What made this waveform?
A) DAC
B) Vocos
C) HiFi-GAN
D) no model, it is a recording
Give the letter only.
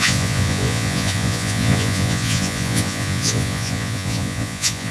B